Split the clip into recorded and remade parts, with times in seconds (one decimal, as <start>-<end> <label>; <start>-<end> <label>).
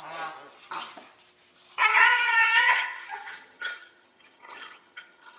0.0-1.9 recorded; 1.9-5.4 remade